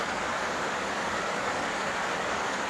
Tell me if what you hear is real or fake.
fake